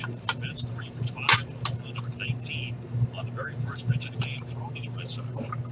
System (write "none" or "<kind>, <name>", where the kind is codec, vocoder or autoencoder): none